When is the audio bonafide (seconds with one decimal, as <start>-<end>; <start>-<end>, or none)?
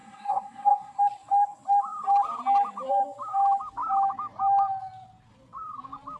1.0-6.2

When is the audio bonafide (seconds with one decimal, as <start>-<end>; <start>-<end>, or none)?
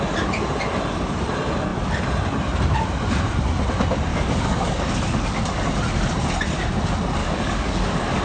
0.0-4.1; 5.6-7.2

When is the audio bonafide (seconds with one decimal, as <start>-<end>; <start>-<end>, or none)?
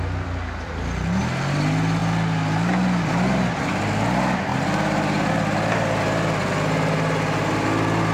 0.0-8.1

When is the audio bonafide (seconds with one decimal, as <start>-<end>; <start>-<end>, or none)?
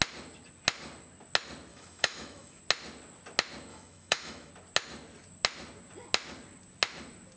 0.0-1.7; 2.6-3.7; 4.5-7.4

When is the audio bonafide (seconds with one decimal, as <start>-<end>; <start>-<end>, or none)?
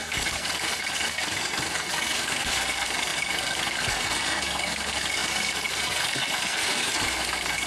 none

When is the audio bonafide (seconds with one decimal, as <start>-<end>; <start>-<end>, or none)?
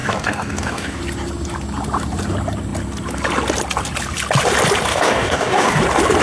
1.0-4.9; 5.8-6.2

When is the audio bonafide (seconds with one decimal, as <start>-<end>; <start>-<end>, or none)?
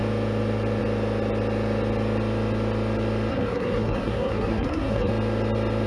0.0-3.3; 5.1-5.9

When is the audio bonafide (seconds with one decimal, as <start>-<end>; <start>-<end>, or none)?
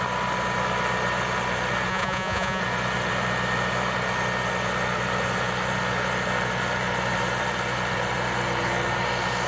0.0-1.9; 2.6-9.5